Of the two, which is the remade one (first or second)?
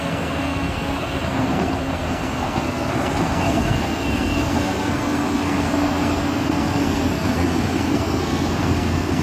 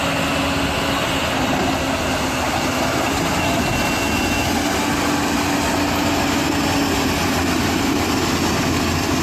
first